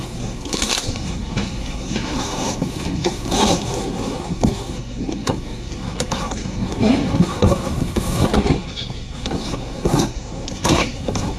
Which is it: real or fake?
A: fake